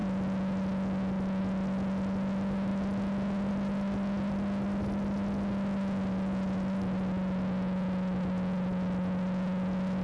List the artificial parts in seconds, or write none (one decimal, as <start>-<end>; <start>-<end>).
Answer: none